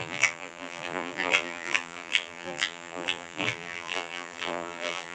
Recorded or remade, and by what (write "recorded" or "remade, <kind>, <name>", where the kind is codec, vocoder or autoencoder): remade, vocoder, BigVGAN v2